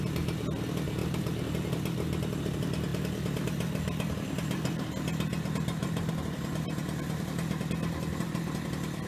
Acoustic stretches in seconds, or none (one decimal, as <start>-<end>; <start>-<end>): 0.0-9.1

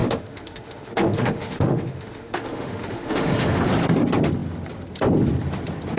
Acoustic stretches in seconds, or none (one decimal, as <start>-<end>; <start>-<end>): 3.6-6.0

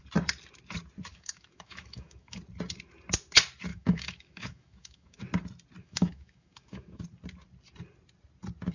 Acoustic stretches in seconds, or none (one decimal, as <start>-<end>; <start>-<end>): 0.0-1.1; 2.4-3.7; 5.2-5.8; 7.0-8.7

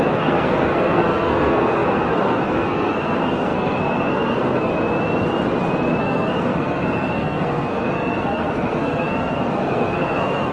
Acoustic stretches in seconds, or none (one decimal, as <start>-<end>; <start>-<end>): 4.7-6.0